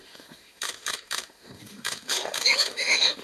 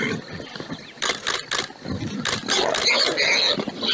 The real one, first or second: second